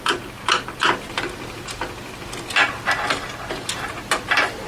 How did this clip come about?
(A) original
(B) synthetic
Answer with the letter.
A